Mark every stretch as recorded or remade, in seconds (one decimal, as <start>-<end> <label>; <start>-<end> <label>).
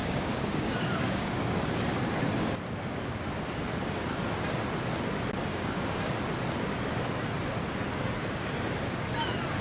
0.0-1.6 remade; 1.6-5.5 recorded; 5.5-6.0 remade; 6.0-9.6 recorded